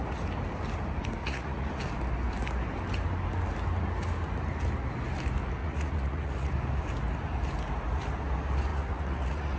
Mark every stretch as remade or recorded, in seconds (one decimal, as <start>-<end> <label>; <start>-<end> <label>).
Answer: 0.0-1.2 recorded; 1.2-1.8 remade; 1.8-5.6 recorded; 5.6-6.5 remade; 6.5-8.7 recorded; 8.7-9.6 remade